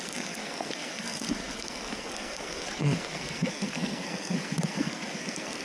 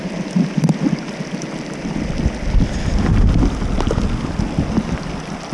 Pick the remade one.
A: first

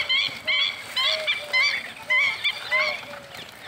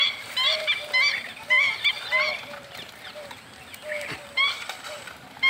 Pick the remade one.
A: second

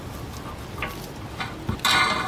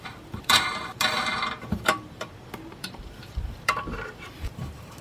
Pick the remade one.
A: second